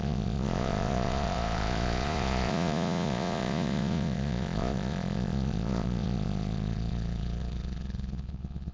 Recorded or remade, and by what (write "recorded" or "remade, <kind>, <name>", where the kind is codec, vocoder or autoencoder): remade, vocoder, Vocos